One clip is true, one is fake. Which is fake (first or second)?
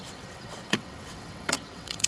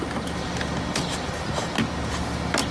first